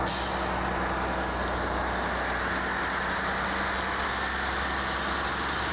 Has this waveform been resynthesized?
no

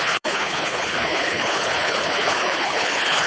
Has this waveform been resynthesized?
yes